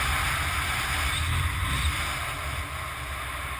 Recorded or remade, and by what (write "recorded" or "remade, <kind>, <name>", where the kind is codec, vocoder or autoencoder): recorded